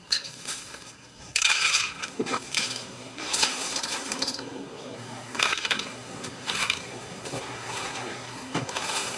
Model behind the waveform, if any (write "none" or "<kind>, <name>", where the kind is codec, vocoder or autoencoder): codec, SNAC